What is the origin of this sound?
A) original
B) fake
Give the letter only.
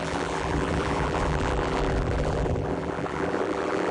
B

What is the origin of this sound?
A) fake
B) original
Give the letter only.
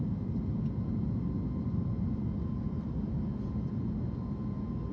B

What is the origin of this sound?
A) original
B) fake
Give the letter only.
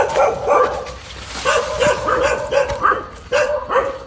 A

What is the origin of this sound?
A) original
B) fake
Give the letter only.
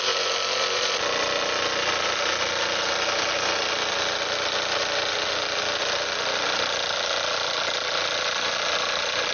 B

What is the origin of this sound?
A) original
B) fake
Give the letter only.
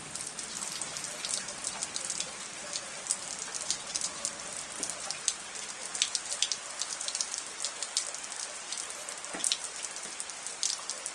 A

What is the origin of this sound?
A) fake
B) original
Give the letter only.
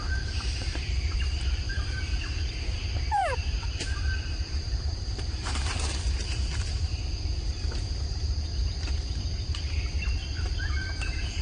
A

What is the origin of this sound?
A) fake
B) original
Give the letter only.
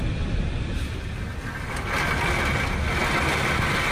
B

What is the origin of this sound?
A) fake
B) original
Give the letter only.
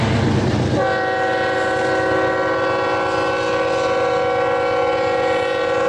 B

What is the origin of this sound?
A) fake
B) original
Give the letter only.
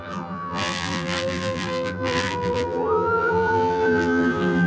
A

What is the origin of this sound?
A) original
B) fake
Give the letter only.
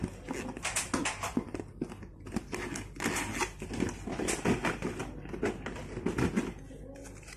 A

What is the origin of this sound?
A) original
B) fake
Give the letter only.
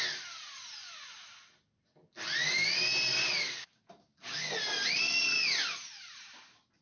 A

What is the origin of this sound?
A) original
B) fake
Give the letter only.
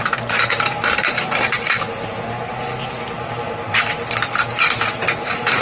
B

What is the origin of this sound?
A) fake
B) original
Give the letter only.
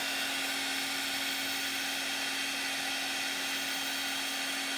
B